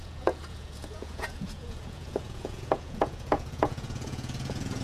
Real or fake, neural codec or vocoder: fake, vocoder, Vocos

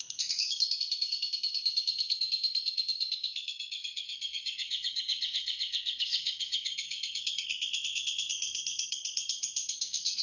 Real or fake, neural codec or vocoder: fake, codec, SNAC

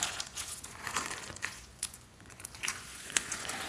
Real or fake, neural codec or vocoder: fake, vocoder, Vocos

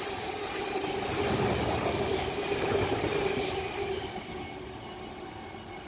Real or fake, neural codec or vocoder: real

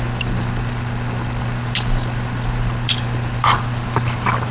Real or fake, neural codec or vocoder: real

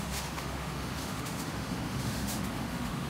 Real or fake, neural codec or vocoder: fake, autoencoder, DAC-VAE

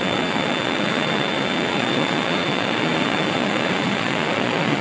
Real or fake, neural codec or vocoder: fake, vocoder, Vocos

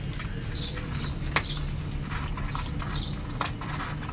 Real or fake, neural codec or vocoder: real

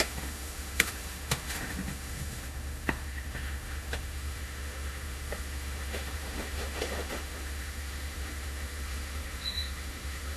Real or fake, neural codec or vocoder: fake, autoencoder, DAC-VAE